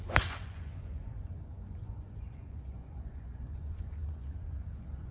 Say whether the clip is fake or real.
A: fake